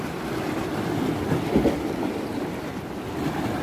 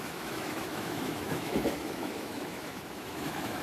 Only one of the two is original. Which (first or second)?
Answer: first